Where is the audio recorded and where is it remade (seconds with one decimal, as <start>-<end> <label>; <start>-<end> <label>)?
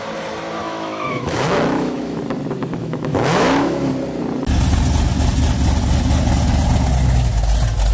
0.0-0.6 recorded; 0.6-2.2 remade; 2.2-2.8 recorded; 2.8-3.9 remade; 3.9-7.9 recorded